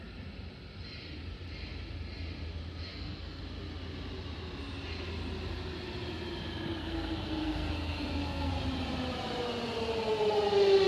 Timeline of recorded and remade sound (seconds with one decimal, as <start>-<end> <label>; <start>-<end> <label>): 0.0-2.9 recorded; 2.9-3.4 remade; 3.4-6.8 recorded; 6.8-8.5 remade; 8.5-10.9 recorded